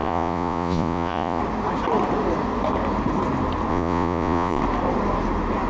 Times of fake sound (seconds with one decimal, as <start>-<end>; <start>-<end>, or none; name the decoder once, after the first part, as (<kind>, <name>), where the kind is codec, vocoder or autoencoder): 0.0-1.4 (vocoder, Vocos); 3.7-4.6